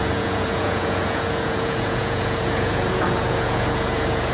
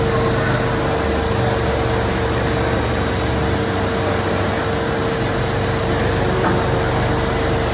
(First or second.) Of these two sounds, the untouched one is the second